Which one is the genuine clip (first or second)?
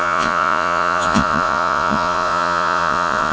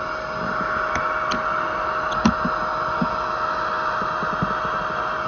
second